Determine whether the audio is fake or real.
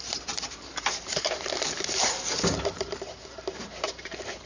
fake